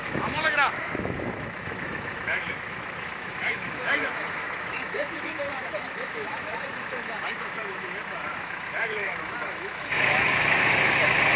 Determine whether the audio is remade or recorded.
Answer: remade